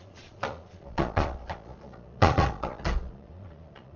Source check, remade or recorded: remade